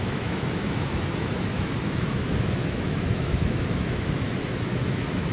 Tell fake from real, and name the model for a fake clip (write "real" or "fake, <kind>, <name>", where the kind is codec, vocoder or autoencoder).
fake, autoencoder, DAC-VAE